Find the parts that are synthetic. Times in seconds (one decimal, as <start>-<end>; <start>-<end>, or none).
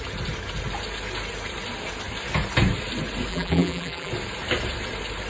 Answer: 3.3-4.1